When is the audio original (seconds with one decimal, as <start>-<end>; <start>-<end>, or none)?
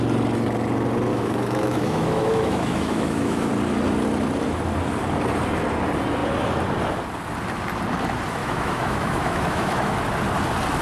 0.0-1.1; 3.5-8.4; 9.9-10.8